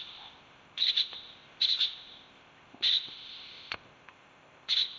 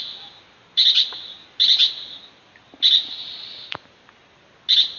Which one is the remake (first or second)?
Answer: first